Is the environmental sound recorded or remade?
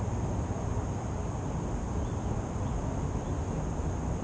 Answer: recorded